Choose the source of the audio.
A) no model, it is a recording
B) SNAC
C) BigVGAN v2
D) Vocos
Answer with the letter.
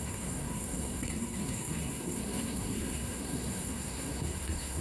B